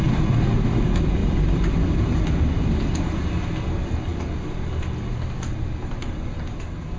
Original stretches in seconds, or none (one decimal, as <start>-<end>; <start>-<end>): 0.0-7.0